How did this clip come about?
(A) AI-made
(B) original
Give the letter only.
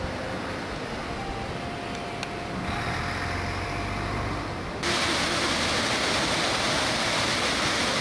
B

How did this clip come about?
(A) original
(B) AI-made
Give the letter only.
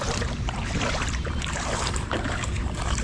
B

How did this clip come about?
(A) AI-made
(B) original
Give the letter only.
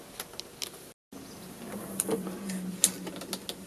B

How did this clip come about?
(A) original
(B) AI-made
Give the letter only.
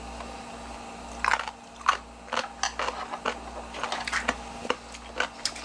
A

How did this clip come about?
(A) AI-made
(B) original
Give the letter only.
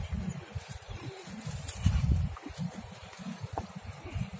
A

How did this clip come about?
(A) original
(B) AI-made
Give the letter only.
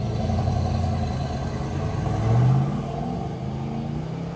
A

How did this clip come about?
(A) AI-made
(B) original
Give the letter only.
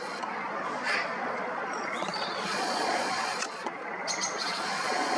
A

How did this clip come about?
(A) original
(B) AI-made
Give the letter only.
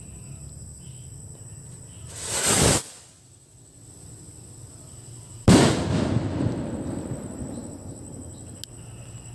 A